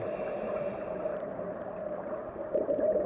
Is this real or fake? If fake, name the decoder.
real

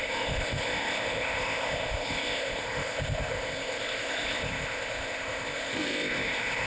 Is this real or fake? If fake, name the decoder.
fake, codec, ZipCodec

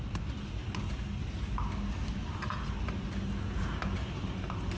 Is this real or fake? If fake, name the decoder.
real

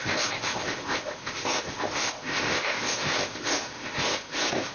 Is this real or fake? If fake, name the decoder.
fake, codec, ZipCodec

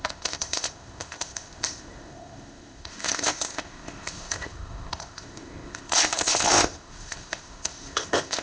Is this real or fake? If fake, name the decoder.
fake, codec, ZipCodec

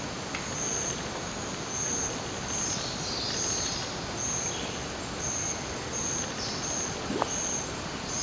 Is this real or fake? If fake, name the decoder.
real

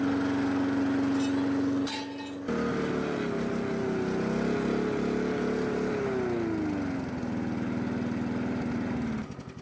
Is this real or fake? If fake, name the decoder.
real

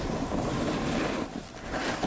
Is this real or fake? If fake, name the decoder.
real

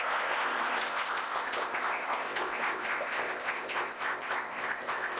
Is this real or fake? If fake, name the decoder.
fake, codec, ZipCodec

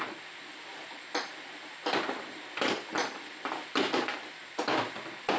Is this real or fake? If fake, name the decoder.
real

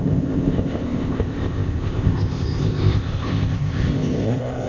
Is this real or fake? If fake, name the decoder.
fake, codec, ZipCodec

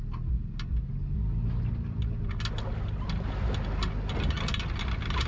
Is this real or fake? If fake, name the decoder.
real